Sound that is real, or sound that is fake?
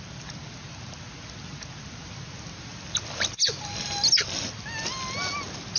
real